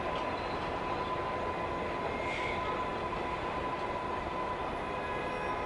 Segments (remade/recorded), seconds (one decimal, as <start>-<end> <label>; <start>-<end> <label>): 0.0-5.7 recorded